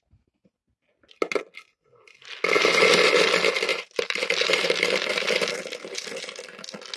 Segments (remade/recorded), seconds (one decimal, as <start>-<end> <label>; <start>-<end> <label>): 0.0-2.6 recorded; 2.6-3.1 remade; 3.1-3.7 recorded; 3.7-5.3 remade; 5.3-7.0 recorded